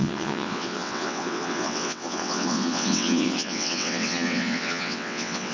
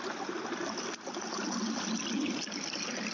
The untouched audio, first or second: second